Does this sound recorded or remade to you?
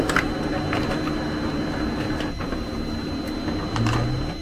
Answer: recorded